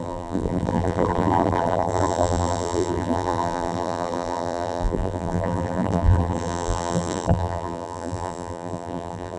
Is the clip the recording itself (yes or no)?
no